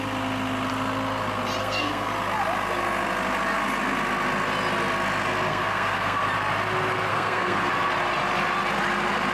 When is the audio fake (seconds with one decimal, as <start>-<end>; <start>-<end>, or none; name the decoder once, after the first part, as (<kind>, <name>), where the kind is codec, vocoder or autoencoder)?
1.6-2.1 (codec, SNAC); 5.5-6.2; 7.1-7.7